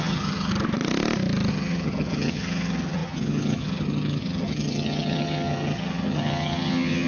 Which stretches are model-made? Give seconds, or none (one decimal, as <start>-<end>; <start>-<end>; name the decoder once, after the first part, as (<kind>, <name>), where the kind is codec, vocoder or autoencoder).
0.0-0.5 (vocoder, HiFi-GAN); 1.5-7.1